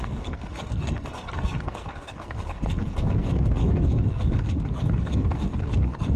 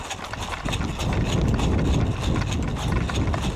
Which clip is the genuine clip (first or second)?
second